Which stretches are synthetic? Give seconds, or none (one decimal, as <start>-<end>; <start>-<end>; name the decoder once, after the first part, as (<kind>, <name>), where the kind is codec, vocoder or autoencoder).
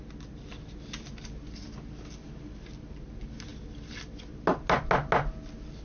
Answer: none